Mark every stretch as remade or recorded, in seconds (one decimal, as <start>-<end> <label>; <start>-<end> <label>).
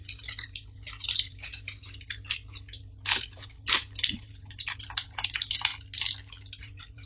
0.0-5.7 remade; 5.7-6.6 recorded; 6.6-7.1 remade